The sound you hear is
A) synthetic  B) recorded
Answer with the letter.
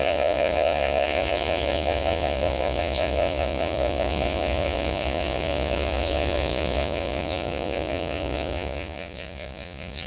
A